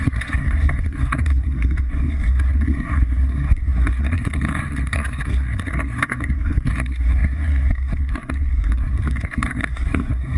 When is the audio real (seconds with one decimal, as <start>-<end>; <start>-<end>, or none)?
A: none